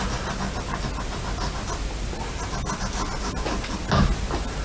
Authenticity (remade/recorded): recorded